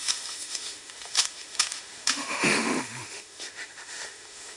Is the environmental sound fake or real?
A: fake